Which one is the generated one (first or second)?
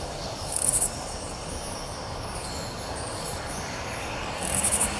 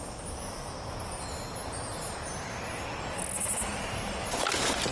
first